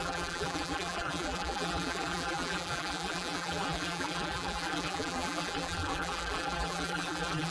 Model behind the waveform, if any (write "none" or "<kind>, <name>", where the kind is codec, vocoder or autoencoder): vocoder, BigVGAN v2